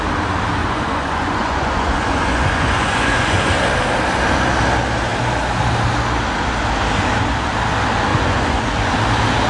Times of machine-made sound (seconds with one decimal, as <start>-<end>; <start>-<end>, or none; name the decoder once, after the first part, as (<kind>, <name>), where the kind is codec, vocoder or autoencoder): 0.6-3.5 (vocoder, Vocos); 8.1-8.9